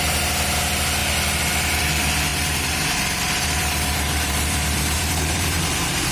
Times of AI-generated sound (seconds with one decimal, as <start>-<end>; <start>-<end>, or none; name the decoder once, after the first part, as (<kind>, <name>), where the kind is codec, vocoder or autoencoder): 2.3-6.1 (vocoder, BigVGAN v2)